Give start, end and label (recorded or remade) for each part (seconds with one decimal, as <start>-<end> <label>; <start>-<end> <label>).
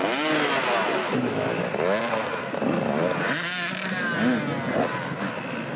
0.0-1.0 recorded; 1.0-1.6 remade; 1.6-5.8 recorded